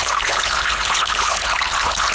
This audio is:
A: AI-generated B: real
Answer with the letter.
A